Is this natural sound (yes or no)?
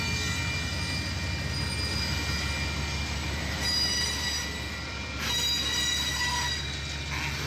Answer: yes